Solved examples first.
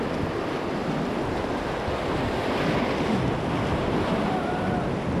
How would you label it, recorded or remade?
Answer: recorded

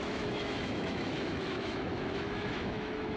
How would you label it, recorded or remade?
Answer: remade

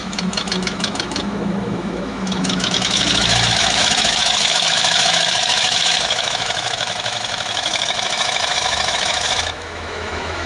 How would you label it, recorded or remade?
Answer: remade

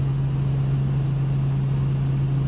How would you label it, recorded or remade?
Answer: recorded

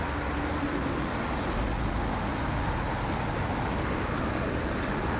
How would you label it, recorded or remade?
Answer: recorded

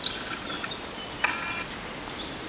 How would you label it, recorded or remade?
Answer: recorded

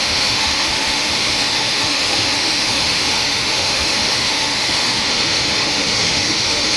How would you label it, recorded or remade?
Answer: remade